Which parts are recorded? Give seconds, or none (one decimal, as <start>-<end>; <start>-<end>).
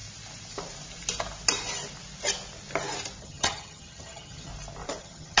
0.0-3.2; 4.5-5.0